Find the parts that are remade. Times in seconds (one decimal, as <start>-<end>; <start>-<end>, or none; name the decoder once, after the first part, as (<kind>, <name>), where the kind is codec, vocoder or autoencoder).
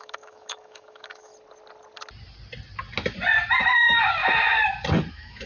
0.0-1.3 (autoencoder, DAC-VAE); 3.6-4.2; 5.1-5.5